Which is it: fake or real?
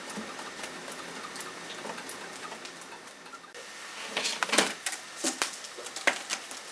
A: real